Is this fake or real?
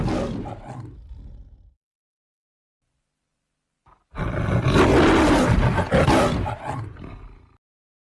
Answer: real